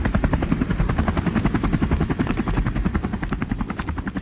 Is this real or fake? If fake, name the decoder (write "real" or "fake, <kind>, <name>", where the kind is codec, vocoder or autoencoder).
fake, vocoder, BigVGAN v2